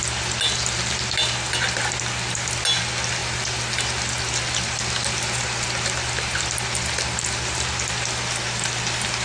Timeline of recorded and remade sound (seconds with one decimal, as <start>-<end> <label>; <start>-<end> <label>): 0.0-9.2 recorded